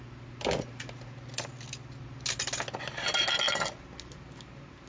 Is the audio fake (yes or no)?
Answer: no